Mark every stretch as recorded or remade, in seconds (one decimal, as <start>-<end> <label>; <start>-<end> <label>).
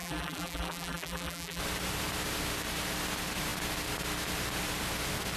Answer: 0.0-1.6 remade; 1.6-5.4 recorded